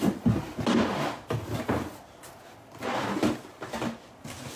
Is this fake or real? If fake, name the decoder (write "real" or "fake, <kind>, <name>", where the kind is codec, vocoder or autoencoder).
real